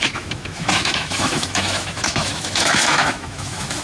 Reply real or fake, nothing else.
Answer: fake